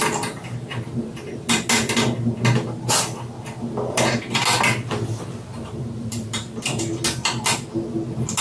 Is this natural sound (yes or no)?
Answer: yes